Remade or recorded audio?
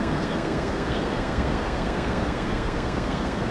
remade